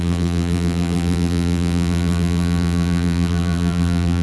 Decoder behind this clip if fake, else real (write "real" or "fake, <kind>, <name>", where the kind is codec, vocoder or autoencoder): fake, vocoder, BigVGAN v2